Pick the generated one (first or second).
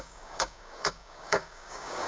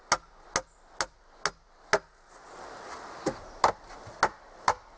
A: first